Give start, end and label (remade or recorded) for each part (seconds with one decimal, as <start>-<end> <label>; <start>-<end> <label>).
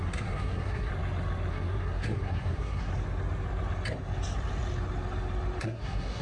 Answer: 0.0-0.9 remade; 0.9-1.5 recorded; 1.5-2.9 remade; 2.9-5.6 recorded; 5.6-6.2 remade